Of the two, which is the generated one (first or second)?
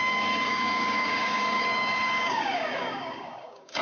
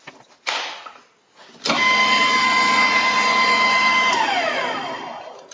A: first